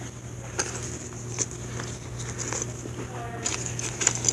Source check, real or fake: real